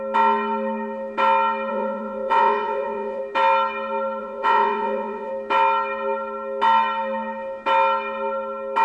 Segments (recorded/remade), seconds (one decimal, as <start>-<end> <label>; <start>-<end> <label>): 0.0-1.7 recorded; 1.7-3.2 remade; 3.2-4.2 recorded; 4.2-5.3 remade; 5.3-8.8 recorded